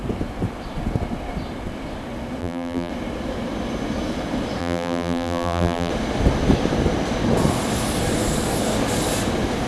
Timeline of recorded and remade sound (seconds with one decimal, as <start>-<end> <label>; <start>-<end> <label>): 0.0-2.4 recorded; 2.4-2.9 remade; 2.9-4.6 recorded; 4.6-5.9 remade; 5.9-9.7 recorded